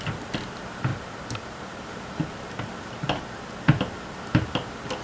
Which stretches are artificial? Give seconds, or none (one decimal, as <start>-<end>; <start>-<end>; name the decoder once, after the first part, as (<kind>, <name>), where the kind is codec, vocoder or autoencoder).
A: none

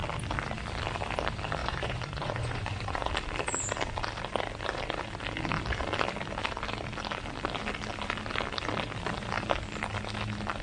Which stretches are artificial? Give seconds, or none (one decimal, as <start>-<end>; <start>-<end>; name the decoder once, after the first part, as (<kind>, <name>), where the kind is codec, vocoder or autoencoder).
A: 1.6-3.1 (vocoder, Vocos)

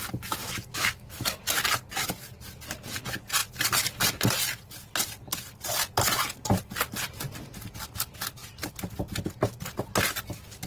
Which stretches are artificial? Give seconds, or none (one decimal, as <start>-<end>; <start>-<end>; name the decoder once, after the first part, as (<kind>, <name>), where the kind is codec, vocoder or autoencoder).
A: 0.4-1.4 (autoencoder, DAC-VAE)

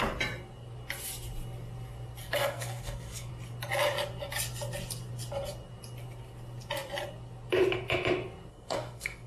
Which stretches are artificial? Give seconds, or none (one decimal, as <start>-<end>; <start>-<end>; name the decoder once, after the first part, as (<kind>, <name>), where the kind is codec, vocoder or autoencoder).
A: 2.2-3.3 (codec, SNAC); 8.5-9.3

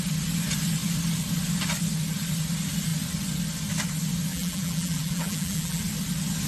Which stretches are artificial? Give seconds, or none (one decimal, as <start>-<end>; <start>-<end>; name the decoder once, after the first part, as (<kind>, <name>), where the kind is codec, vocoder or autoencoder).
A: 4.3-5.8 (vocoder, BigVGAN v2)

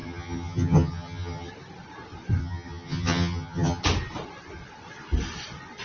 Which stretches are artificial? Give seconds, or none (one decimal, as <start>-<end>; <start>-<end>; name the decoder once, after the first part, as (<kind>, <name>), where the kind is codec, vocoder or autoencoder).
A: 0.0-1.5 (vocoder, HiFi-GAN); 2.4-3.8

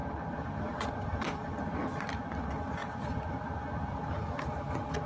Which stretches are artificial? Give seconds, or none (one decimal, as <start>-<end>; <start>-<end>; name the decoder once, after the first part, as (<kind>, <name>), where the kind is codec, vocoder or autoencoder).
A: none